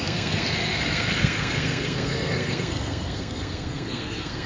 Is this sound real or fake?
fake